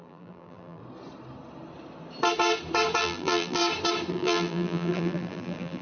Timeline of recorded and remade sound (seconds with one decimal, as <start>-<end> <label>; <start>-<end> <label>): 0.0-0.8 remade; 0.8-3.0 recorded; 3.0-3.6 remade; 3.6-4.1 recorded; 4.1-5.8 remade